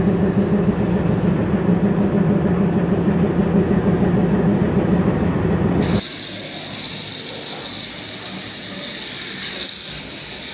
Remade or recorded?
recorded